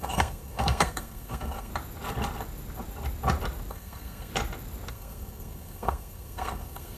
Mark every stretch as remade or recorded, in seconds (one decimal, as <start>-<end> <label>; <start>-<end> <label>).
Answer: 0.0-1.7 remade; 1.7-3.7 recorded; 3.7-4.3 remade; 4.3-4.9 recorded; 4.9-7.0 remade